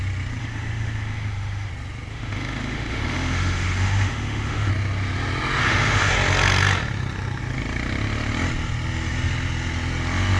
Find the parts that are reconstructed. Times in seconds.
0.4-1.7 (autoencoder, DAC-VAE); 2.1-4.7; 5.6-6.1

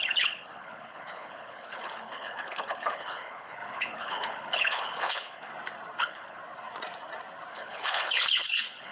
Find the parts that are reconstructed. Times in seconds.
0.0-5.5 (codec, HILCodec); 6.0-6.4; 7.5-8.9

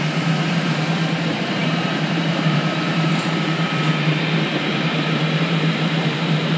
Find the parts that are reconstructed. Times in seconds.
0.0-6.6 (vocoder, BigVGAN v2)

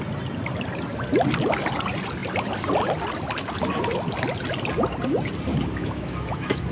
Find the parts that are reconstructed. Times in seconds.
5.8-6.7 (autoencoder, DAC-VAE)

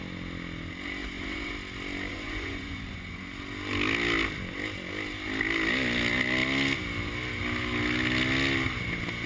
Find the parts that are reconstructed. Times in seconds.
1.0-1.5 (vocoder, Vocos); 2.1-3.4

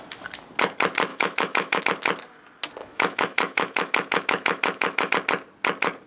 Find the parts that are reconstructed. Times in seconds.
1.1-1.8 (autoencoder, DAC-VAE); 2.8-5.1